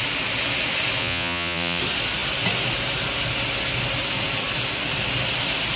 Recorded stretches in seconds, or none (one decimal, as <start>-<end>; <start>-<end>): 0.0-1.0; 1.8-5.8